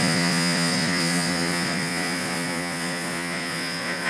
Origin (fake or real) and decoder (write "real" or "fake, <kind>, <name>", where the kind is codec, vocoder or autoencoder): fake, vocoder, Vocos